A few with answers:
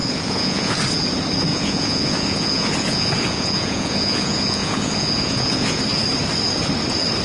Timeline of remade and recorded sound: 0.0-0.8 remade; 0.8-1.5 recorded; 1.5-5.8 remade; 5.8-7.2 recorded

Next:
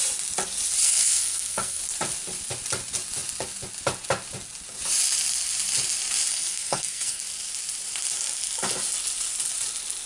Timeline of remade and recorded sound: 0.0-0.8 recorded; 0.8-1.8 remade; 1.8-6.3 recorded; 6.3-7.2 remade; 7.2-10.1 recorded

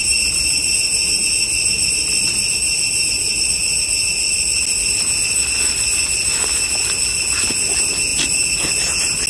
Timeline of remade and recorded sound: 0.0-6.0 recorded; 6.0-6.7 remade; 6.7-9.3 recorded

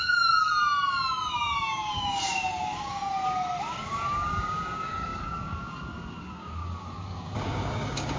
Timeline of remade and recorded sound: 0.0-0.5 remade; 0.5-1.3 recorded; 1.3-3.0 remade; 3.0-3.6 recorded; 3.6-8.2 remade

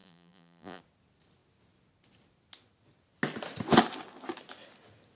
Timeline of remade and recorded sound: 0.0-0.8 remade; 0.8-5.2 recorded

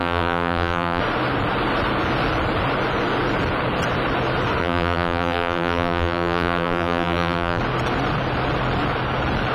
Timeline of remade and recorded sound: 0.0-1.0 remade; 1.0-4.6 recorded; 4.6-7.6 remade; 7.6-9.5 recorded

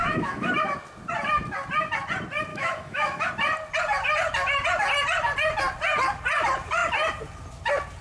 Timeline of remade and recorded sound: 0.0-0.5 remade; 0.5-2.5 recorded; 2.5-3.3 remade; 3.3-8.0 recorded